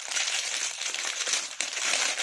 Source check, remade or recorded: remade